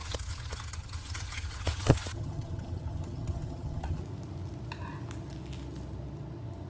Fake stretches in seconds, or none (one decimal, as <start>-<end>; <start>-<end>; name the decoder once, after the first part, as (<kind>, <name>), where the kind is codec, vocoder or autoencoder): 0.0-4.0 (vocoder, HiFi-GAN)